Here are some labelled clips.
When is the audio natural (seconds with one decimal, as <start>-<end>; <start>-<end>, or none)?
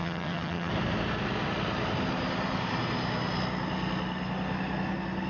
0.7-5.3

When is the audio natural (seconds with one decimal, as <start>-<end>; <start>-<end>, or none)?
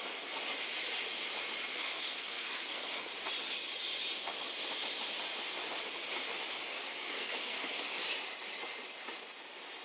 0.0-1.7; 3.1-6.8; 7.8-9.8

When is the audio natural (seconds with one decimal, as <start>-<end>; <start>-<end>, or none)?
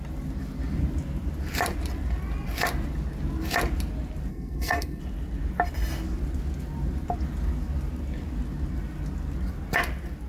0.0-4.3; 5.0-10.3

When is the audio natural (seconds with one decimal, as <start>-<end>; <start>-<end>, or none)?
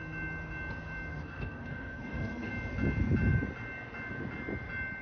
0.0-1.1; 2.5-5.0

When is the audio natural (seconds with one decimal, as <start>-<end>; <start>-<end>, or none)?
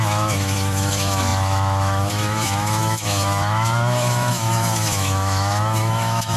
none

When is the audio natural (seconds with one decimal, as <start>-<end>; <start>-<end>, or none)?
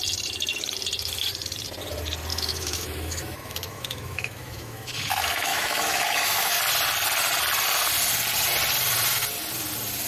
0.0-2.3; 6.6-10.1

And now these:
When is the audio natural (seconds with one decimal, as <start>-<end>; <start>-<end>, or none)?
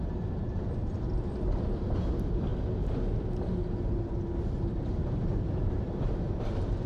0.0-0.8; 2.5-4.7